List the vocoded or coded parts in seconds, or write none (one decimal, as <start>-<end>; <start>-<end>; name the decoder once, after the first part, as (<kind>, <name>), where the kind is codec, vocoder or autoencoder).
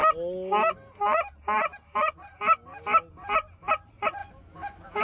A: 4.2-5.0 (autoencoder, DAC-VAE)